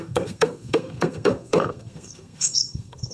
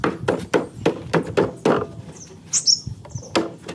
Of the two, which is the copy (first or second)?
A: first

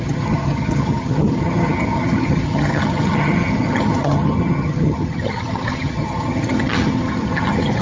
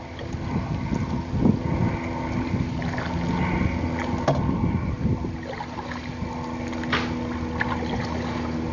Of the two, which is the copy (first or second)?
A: first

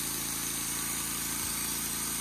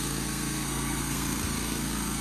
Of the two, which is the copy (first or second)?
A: second